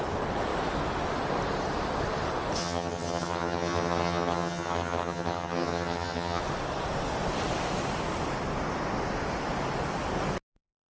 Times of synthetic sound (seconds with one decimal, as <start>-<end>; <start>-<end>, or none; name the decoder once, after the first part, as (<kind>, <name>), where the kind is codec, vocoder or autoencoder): 2.6-6.4 (vocoder, HiFi-GAN)

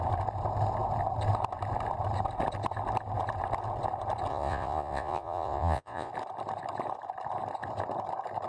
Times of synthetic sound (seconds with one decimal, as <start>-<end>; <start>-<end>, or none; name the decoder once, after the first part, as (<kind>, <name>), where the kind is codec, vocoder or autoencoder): 4.3-6.1 (vocoder, Vocos)

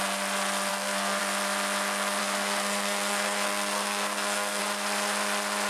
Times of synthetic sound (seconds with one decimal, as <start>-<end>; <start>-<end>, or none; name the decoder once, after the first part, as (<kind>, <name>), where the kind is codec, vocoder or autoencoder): 0.7-1.2 (codec, SNAC); 2.2-4.6

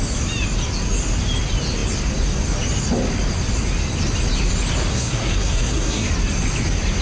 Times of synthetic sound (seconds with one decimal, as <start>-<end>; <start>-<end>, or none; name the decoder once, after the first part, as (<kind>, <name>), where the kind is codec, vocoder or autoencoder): 4.9-6.1 (codec, SNAC)